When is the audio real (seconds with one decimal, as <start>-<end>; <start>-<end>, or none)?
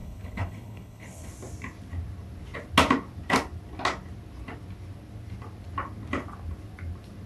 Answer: 1.3-7.3